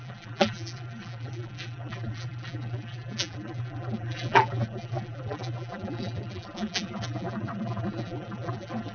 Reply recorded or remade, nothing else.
remade